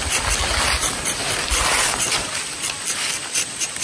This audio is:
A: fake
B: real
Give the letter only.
B